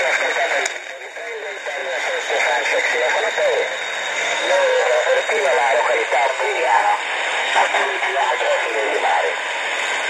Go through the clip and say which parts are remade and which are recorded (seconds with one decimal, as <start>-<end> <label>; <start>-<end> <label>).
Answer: 0.0-4.1 recorded; 4.1-5.2 remade; 5.2-6.3 recorded; 6.3-7.0 remade; 7.0-7.4 recorded; 7.4-9.0 remade; 9.0-10.1 recorded